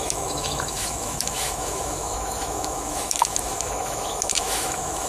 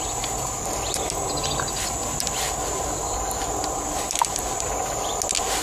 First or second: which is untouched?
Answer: second